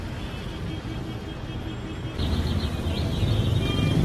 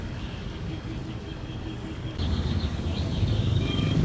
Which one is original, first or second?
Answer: first